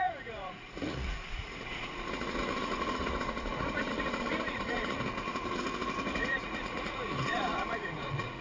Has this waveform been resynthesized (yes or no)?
yes